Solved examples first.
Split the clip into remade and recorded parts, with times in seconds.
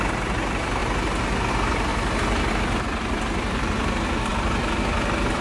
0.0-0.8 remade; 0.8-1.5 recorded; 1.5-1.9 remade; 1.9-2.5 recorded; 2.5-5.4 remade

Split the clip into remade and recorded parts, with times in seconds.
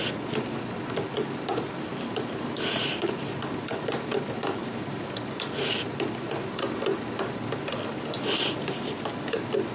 0.0-9.7 recorded